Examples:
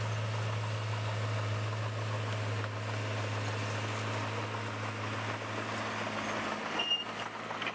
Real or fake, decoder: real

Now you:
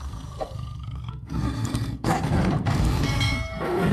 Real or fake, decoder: fake, codec, SNAC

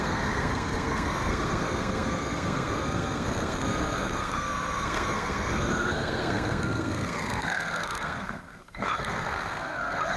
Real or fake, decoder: fake, codec, SNAC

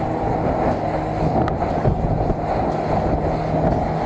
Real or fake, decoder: real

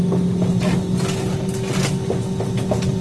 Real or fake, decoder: real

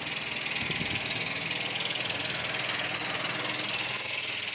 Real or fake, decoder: real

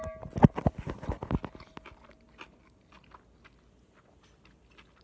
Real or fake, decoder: real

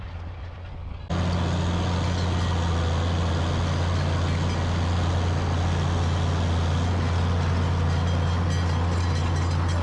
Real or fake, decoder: real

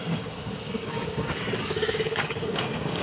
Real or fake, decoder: fake, codec, DAC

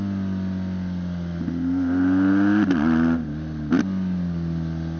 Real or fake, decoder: real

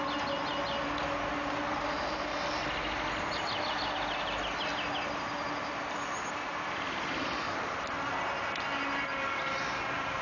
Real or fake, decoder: real